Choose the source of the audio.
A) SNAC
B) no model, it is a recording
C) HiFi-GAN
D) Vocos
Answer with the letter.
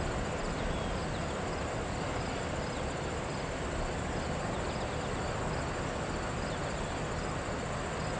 B